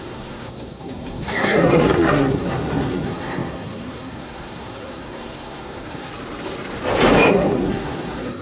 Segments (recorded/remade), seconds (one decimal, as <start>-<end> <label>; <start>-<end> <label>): 0.0-6.1 remade; 6.1-7.3 recorded; 7.3-8.4 remade